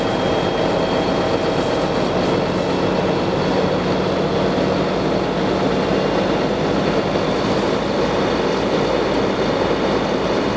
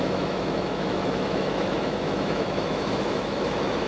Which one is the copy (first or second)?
second